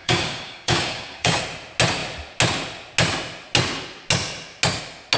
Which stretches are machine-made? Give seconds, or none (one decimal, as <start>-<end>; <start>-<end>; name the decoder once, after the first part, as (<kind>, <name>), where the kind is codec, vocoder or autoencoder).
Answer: 0.0-1.4 (codec, DAC)